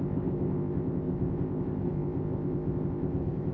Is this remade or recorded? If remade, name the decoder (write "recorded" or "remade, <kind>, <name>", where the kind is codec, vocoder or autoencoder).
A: remade, codec, ZipCodec